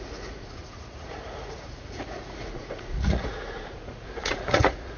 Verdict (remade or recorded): remade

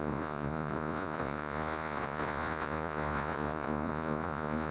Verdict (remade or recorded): remade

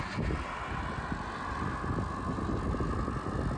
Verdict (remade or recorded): recorded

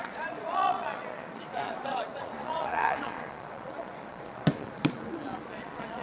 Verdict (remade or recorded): remade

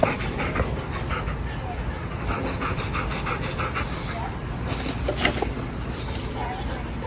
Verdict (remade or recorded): recorded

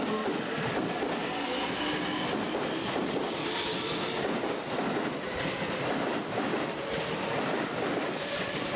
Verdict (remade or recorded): recorded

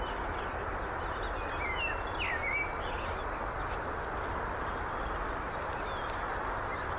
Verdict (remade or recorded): recorded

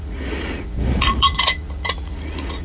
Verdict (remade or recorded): remade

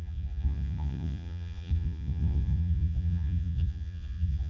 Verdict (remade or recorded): remade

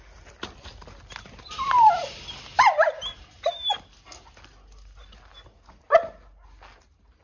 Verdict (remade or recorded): recorded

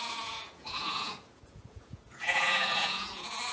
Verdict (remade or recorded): remade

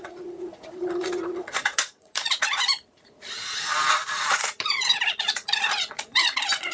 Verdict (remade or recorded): remade